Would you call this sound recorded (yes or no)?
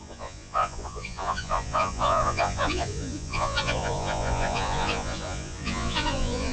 no